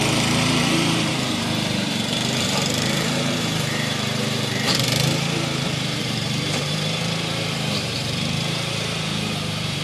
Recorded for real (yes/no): no